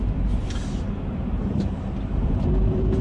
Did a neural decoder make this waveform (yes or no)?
yes